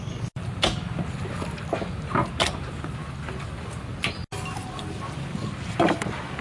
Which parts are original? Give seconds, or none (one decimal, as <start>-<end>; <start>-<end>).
0.0-6.4